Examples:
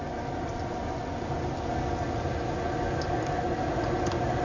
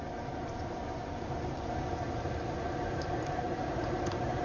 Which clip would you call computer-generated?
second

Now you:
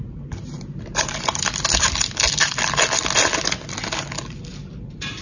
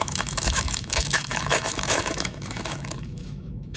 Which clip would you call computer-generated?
second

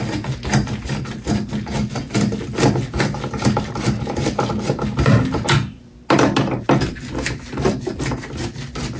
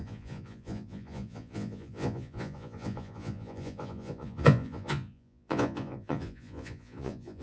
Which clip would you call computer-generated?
second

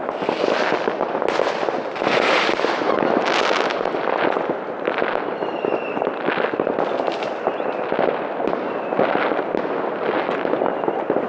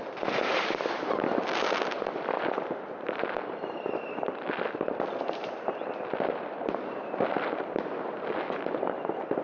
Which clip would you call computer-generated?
second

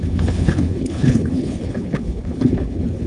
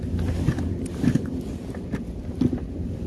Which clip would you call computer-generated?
first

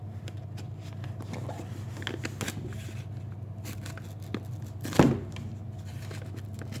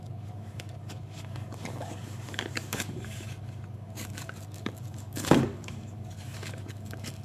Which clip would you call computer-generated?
second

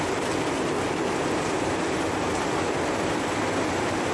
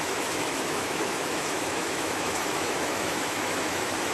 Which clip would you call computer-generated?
second